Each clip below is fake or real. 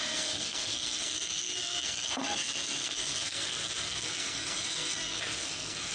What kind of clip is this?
fake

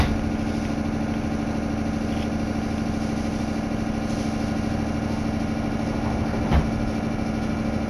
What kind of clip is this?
real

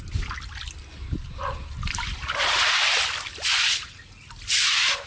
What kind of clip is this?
real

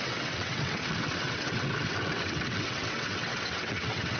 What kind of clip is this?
fake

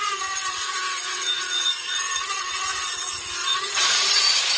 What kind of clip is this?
fake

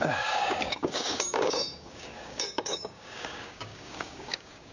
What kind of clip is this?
fake